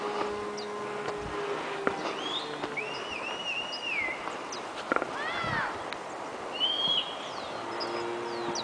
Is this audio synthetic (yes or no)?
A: no